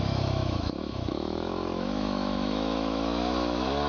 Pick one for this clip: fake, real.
fake